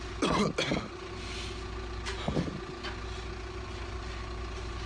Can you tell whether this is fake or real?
real